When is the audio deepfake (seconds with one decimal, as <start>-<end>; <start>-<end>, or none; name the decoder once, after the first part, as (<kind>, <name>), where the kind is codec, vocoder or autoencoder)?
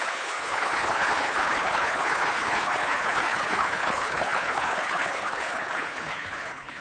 0.0-6.8 (codec, HILCodec)